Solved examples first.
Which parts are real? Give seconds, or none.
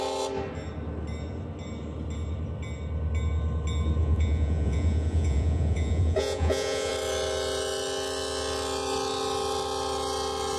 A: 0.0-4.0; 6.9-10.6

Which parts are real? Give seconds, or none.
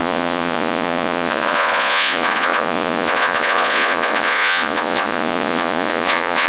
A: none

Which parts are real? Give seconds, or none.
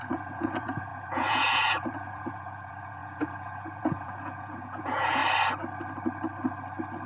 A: 5.2-7.1